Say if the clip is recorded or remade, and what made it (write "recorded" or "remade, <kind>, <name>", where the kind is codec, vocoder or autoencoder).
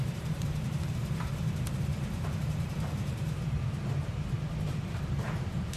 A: remade, vocoder, BigVGAN v2